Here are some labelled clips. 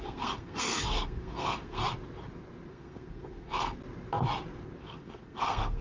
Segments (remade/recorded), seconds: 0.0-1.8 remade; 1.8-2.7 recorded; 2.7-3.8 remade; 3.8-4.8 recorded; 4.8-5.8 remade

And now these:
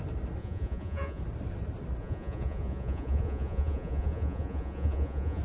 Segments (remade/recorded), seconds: 0.0-0.4 recorded; 0.4-1.2 remade; 1.2-2.0 recorded; 2.0-5.4 remade

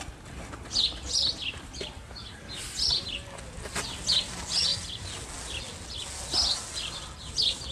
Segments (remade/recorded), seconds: 0.0-7.7 recorded

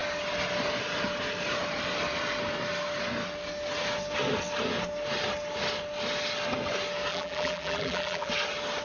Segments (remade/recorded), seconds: 0.0-7.1 recorded; 7.1-8.3 remade; 8.3-8.8 recorded

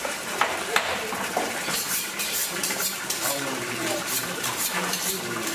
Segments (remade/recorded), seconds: 0.0-5.5 remade

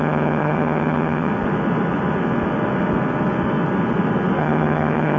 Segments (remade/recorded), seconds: 0.0-1.3 remade; 1.3-4.4 recorded; 4.4-5.2 remade

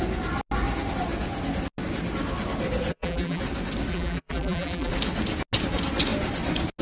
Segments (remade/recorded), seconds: 0.0-2.9 recorded; 2.9-3.4 remade; 3.4-3.9 recorded; 3.9-4.9 remade; 4.9-6.8 recorded

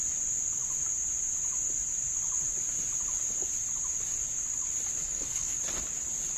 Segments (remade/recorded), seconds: 0.0-5.0 recorded; 5.0-5.6 remade; 5.6-6.4 recorded